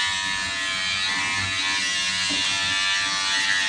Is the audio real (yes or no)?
yes